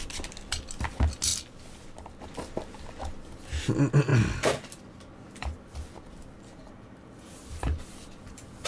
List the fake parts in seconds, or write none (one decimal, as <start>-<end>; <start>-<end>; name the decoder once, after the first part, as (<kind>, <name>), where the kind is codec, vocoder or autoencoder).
6.6-7.9 (vocoder, BigVGAN v2)